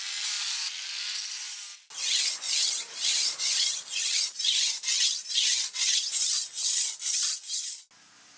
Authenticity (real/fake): real